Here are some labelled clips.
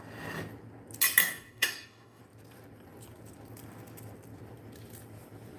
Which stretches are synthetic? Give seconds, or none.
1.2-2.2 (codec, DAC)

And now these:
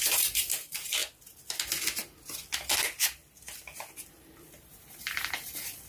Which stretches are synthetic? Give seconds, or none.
0.0-1.0 (vocoder, BigVGAN v2); 4.5-5.9